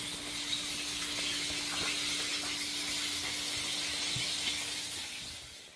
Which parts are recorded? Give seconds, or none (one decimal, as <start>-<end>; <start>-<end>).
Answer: 0.0-5.8